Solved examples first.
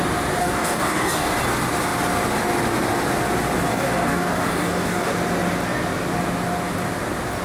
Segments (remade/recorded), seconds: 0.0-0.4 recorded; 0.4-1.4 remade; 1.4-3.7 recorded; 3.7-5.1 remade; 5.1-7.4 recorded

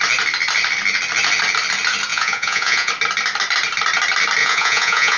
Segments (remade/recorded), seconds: 0.0-2.1 recorded; 2.1-2.9 remade; 2.9-4.4 recorded; 4.4-5.2 remade

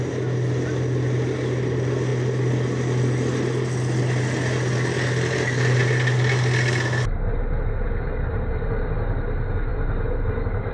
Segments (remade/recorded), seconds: 0.0-10.7 recorded